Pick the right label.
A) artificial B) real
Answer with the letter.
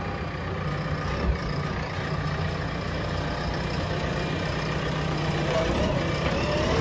B